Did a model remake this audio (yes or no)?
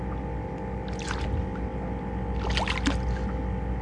no